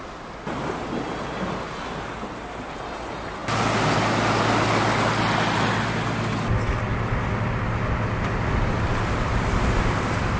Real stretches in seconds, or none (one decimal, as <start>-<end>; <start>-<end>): 0.0-10.4